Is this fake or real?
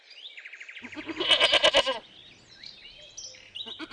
real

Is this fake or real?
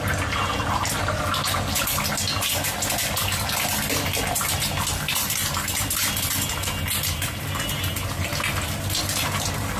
real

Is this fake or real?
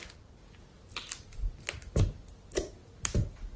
real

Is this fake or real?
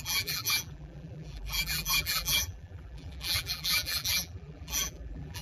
fake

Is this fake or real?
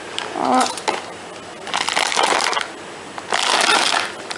real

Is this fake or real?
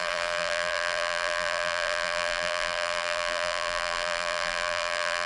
fake